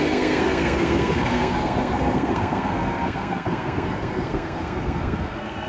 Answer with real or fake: fake